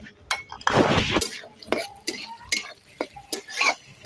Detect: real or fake real